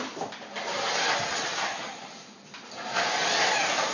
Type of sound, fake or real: real